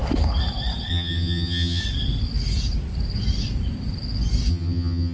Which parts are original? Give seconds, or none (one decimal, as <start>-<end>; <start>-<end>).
0.0-0.9; 1.8-4.5